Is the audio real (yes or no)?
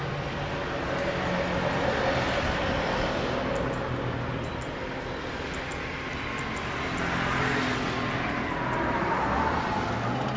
yes